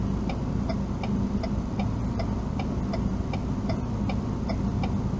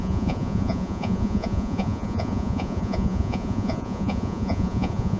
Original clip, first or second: first